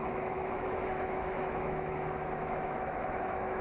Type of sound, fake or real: fake